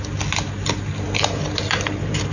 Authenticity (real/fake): real